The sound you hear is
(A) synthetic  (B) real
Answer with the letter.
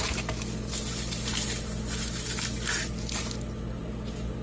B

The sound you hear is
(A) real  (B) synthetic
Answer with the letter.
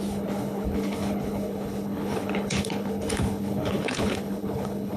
B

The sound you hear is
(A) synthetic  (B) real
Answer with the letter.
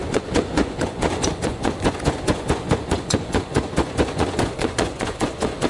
A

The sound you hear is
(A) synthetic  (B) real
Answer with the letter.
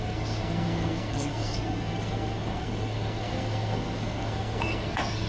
A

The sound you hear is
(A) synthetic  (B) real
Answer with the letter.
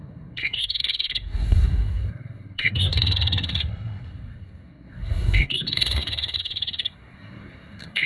A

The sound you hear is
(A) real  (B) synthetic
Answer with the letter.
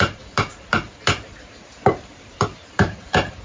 B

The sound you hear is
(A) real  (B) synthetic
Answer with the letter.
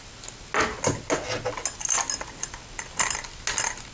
A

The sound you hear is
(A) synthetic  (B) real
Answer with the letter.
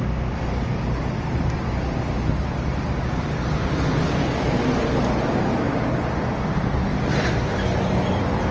B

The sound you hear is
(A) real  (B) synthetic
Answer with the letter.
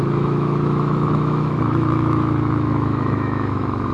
B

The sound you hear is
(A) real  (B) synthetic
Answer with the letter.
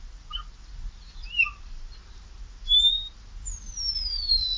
A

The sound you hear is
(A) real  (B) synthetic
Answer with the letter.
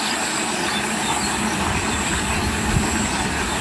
A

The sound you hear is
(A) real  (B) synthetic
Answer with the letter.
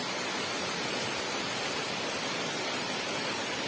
B